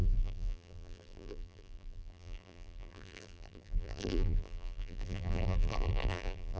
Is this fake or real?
fake